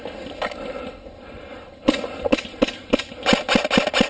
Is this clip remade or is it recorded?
recorded